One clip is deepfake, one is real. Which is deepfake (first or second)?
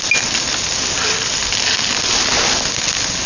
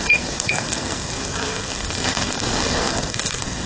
second